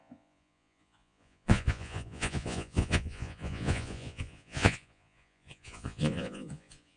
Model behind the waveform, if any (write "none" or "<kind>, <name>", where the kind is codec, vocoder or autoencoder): vocoder, Vocos